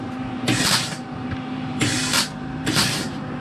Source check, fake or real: fake